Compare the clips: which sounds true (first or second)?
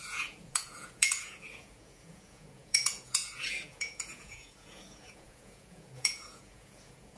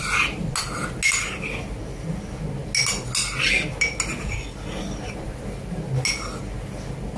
second